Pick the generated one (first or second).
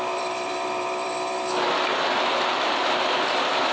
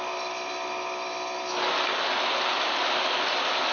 first